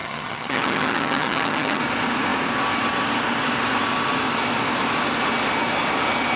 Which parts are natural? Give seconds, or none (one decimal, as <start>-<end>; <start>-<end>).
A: 1.8-6.4